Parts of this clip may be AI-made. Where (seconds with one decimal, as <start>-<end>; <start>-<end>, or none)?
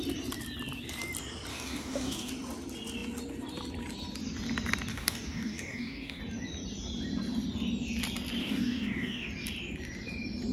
1.5-2.3; 4.9-6.2; 8.4-9.3